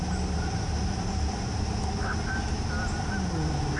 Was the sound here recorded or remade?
recorded